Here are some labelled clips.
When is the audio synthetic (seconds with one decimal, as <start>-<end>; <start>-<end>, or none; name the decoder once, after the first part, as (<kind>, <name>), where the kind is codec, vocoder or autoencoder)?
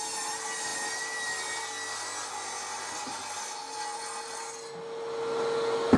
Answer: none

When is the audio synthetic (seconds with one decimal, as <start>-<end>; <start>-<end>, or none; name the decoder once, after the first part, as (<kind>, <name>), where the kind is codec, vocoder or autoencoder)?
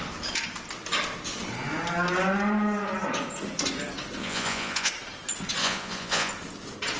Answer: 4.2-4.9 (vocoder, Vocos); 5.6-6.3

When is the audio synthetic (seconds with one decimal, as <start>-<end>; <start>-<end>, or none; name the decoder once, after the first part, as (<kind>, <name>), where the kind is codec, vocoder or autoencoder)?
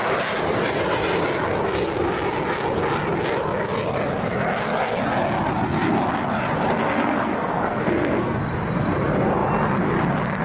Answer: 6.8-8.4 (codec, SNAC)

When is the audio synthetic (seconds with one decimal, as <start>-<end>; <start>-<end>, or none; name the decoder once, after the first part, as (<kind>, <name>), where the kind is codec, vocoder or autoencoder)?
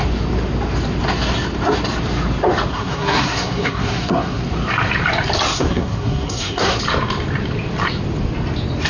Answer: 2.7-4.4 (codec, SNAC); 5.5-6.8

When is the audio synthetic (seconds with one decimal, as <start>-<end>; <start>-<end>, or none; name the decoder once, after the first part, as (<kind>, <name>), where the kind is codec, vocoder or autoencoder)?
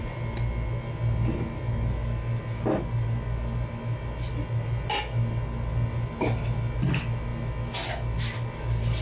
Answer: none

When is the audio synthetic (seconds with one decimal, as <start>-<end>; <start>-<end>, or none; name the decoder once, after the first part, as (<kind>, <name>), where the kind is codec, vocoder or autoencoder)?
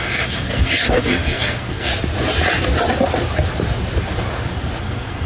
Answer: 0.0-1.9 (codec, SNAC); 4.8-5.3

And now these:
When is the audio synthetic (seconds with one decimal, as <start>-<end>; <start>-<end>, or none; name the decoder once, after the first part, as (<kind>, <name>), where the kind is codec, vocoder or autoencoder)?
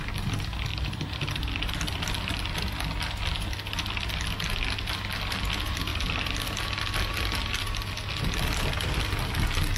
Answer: 0.7-2.7 (vocoder, BigVGAN v2); 5.9-6.6